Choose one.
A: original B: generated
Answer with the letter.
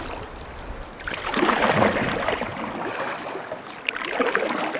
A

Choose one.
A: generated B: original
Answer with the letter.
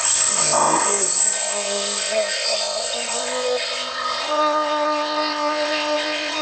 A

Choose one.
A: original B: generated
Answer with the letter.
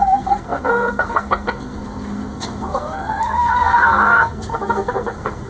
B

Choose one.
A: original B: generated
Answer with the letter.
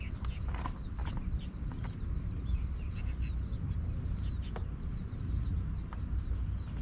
A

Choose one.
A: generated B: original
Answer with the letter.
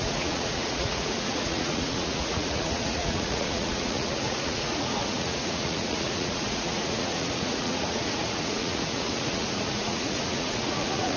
A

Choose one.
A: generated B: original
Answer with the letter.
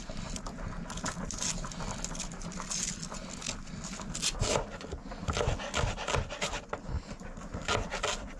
B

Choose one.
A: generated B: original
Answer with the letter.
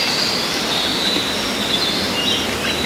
B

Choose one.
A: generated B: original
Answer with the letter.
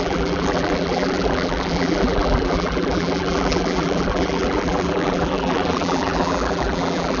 A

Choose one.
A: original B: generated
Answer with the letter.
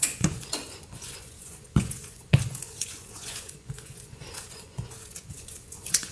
B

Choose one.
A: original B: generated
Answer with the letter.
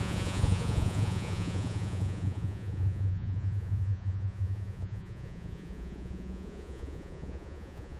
B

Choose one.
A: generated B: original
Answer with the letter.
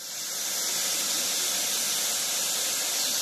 B